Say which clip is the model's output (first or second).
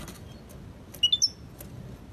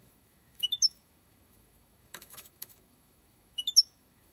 second